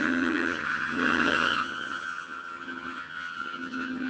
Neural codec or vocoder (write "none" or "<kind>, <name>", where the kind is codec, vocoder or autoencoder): vocoder, HiFi-GAN